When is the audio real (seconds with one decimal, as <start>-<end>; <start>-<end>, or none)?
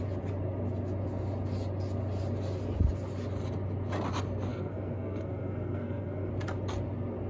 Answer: 0.0-4.5; 6.3-7.3